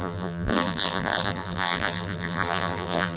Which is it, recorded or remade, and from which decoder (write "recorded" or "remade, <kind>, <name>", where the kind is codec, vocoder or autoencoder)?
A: remade, vocoder, BigVGAN v2